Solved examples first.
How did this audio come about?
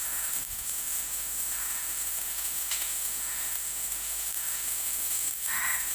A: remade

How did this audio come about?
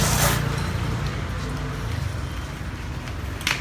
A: recorded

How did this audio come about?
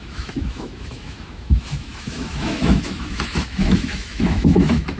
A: remade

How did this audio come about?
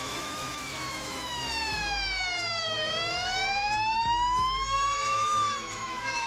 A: remade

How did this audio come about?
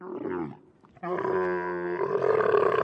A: recorded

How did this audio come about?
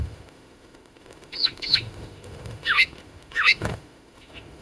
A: remade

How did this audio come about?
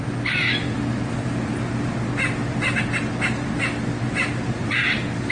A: recorded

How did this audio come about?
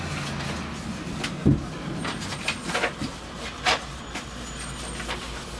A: recorded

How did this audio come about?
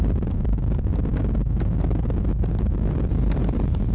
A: recorded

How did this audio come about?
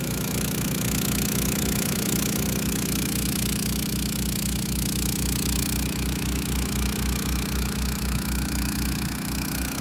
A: remade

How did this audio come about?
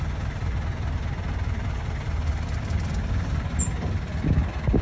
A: recorded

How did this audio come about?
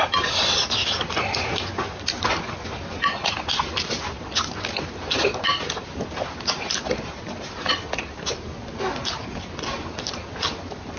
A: recorded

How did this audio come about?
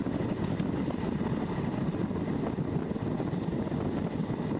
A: recorded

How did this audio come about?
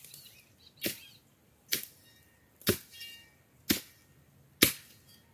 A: recorded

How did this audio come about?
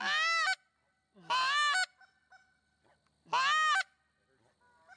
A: recorded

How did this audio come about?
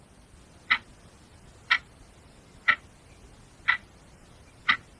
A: recorded